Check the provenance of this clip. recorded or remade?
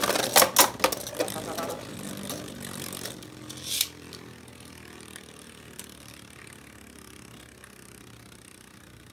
recorded